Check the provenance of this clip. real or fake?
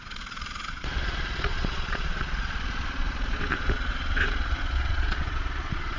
fake